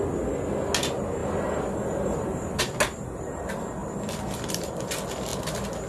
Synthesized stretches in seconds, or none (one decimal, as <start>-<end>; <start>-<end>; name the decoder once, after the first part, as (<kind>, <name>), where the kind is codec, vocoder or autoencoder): 1.2-2.6 (vocoder, BigVGAN v2); 3.8-4.7; 5.3-5.9